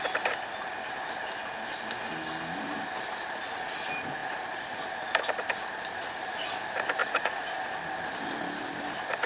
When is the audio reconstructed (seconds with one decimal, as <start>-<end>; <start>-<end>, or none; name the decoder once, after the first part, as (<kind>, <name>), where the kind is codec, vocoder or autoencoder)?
7.0-7.5 (vocoder, Vocos)

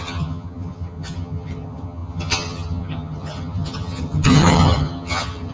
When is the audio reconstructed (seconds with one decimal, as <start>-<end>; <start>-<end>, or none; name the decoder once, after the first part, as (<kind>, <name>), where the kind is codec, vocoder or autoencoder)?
0.0-5.5 (vocoder, HiFi-GAN)

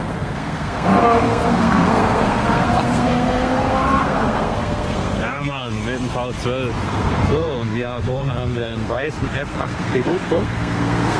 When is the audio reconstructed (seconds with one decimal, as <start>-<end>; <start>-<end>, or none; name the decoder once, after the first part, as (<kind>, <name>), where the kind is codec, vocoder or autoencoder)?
0.0-5.8 (codec, SNAC); 6.8-11.2

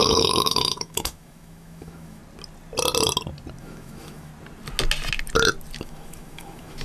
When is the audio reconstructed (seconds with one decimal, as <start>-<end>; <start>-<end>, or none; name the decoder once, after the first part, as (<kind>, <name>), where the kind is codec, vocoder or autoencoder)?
0.0-2.2 (autoencoder, DAC-VAE); 3.6-4.3; 5.8-6.8